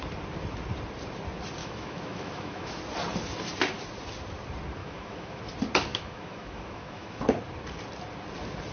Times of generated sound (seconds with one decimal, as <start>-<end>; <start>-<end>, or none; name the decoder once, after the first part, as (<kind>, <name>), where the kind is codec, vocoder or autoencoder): 1.6-2.8 (autoencoder, DAC-VAE); 4.8-5.4; 5.9-7.2